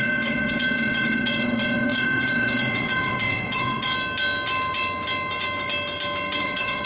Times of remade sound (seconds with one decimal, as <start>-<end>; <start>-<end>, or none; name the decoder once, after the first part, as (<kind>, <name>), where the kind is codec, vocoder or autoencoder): 0.0-3.9 (vocoder, WaveNeXt); 6.4-6.9